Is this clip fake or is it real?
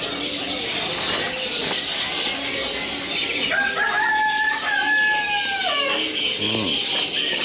real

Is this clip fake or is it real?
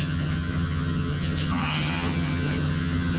fake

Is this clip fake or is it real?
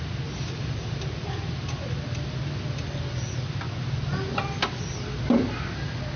real